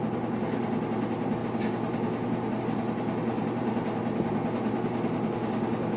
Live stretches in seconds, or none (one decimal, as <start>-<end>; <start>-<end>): 0.0-6.0